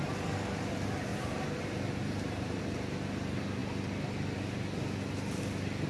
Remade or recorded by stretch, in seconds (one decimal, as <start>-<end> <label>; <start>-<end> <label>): 0.0-1.1 recorded; 1.1-2.6 remade; 2.6-5.9 recorded